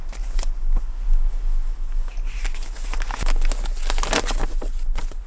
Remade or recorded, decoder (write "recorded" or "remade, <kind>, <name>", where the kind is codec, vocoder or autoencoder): recorded